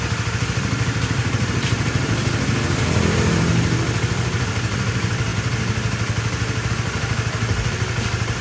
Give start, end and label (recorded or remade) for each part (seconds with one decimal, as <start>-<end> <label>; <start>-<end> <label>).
0.0-1.2 recorded; 1.2-2.3 remade; 2.3-8.4 recorded